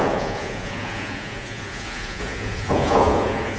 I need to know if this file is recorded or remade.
remade